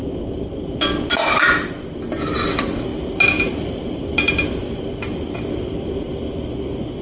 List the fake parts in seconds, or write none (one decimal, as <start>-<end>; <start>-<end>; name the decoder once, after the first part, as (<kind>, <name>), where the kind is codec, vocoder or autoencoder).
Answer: 2.9-4.3 (vocoder, BigVGAN v2)